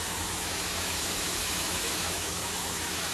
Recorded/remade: remade